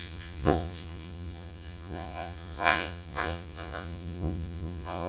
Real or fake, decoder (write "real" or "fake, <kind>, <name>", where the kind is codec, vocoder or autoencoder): fake, vocoder, Vocos